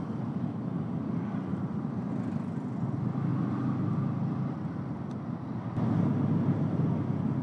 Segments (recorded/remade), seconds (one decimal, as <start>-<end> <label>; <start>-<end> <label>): 0.0-1.5 recorded; 1.5-2.1 remade; 2.1-7.4 recorded